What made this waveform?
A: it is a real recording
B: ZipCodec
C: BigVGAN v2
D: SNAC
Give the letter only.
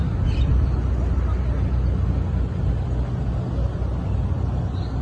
A